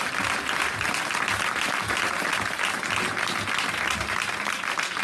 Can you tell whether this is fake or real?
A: real